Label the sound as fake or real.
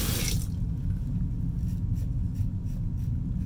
real